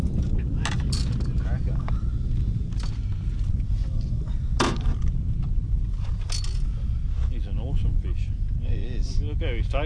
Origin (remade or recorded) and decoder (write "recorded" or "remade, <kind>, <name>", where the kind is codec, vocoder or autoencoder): recorded